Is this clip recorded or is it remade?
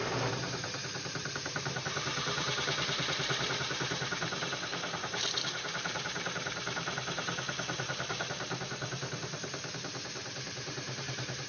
remade